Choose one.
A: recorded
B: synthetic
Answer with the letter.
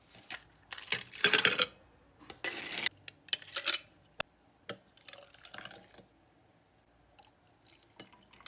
A